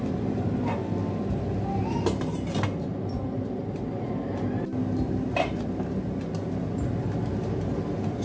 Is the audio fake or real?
real